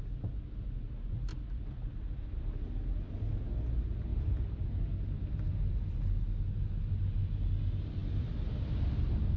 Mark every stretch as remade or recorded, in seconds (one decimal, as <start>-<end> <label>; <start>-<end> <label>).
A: 0.0-1.3 recorded; 1.3-2.0 remade; 2.0-4.1 recorded; 4.1-4.6 remade; 4.6-8.0 recorded; 8.0-9.0 remade; 9.0-9.4 recorded